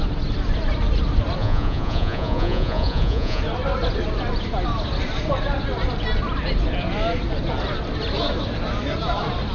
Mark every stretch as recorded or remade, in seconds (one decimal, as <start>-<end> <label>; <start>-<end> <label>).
0.0-1.4 recorded; 1.4-3.4 remade; 3.4-9.5 recorded